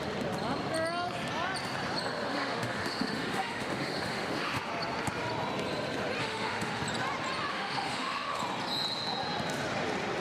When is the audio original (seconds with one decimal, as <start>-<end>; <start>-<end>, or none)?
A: 0.0-2.3; 4.7-6.2; 6.8-7.5; 8.4-10.2